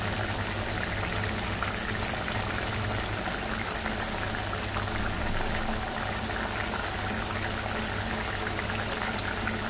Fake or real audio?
real